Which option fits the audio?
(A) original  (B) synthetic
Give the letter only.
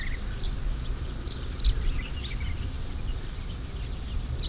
A